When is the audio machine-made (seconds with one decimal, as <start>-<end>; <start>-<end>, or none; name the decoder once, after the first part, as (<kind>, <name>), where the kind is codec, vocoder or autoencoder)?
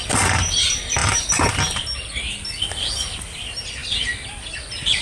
1.0-1.5 (vocoder, BigVGAN v2)